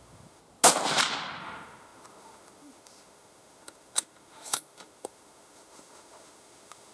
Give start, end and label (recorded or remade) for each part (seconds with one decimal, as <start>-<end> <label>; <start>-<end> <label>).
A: 0.0-0.4 remade; 0.4-1.4 recorded; 1.4-6.9 remade